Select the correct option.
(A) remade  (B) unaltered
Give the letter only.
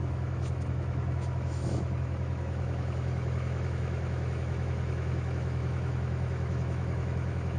A